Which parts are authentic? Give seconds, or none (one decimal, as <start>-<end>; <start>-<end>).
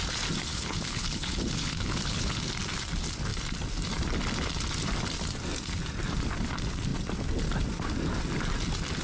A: 0.0-0.5; 2.4-9.0